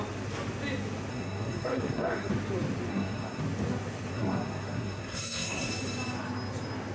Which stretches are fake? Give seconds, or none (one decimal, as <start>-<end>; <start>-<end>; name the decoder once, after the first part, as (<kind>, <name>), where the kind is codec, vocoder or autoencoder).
1.1-2.3 (codec, SNAC); 2.9-3.4; 4.1-5.7